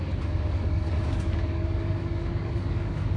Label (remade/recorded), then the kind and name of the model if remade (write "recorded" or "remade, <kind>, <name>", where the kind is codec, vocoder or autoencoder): remade, codec, DAC